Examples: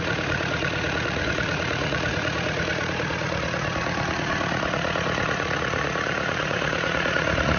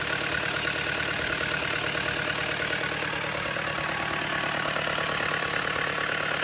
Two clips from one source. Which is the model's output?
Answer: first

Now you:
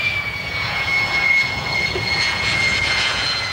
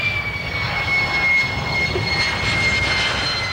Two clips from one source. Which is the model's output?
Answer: first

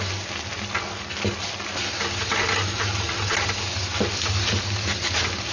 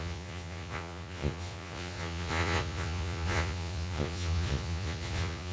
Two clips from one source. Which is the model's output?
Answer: second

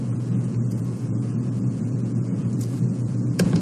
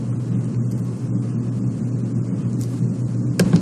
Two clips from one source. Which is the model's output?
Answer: first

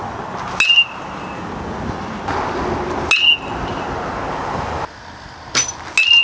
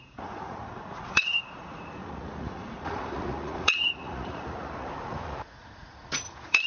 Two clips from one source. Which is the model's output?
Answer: second